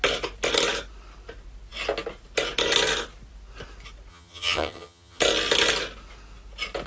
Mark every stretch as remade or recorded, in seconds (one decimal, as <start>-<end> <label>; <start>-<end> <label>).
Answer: 0.0-4.1 recorded; 4.1-5.2 remade; 5.2-6.9 recorded